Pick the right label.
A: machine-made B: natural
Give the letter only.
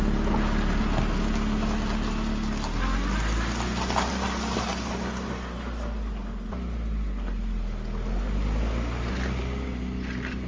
B